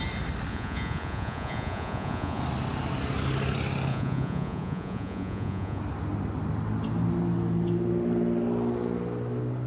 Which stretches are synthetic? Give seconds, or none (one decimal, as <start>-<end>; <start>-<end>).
0.5-2.4; 3.9-5.8